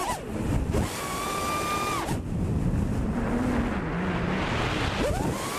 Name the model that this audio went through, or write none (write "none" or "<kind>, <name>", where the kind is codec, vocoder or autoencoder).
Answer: none